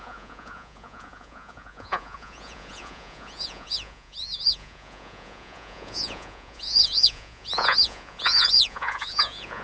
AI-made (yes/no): yes